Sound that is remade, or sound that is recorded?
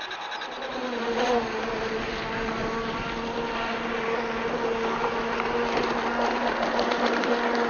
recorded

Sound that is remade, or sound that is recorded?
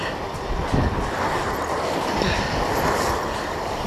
recorded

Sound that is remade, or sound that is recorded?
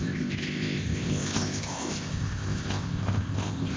remade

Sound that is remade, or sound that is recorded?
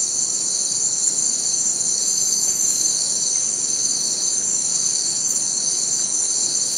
remade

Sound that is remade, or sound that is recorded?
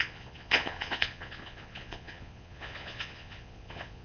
remade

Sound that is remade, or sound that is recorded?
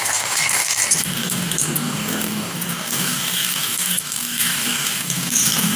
remade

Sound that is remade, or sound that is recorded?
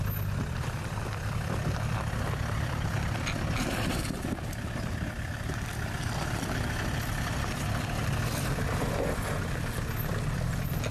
recorded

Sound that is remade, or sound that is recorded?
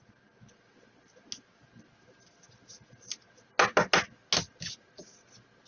recorded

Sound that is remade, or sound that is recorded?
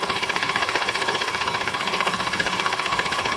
remade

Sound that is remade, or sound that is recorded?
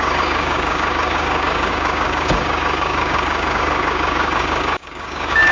remade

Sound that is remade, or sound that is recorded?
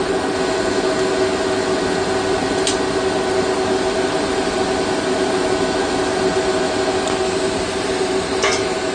recorded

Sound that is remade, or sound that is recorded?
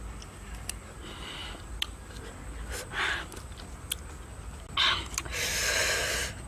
recorded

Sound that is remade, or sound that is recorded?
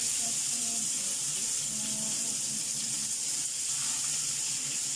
remade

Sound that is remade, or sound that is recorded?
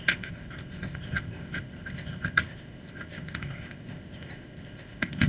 remade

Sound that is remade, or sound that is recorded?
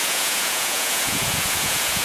remade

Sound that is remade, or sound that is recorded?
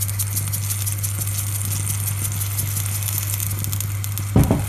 recorded